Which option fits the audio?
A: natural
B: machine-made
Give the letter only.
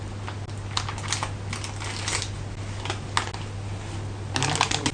A